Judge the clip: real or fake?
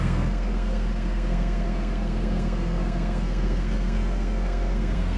fake